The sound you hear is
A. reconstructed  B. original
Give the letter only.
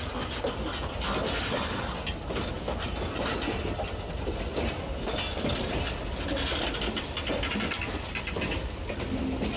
B